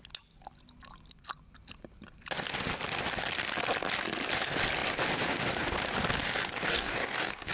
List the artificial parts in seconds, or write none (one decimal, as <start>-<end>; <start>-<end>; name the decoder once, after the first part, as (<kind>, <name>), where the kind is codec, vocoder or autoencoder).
6.7-7.5 (codec, DAC)